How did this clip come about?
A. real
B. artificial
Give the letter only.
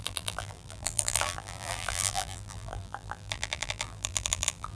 B